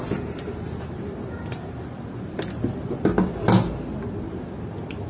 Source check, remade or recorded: recorded